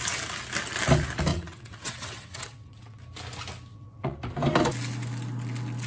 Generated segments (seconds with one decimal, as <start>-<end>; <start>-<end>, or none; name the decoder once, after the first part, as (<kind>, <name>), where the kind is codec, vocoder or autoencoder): 1.3-3.0 (vocoder, WaveNeXt); 3.7-4.2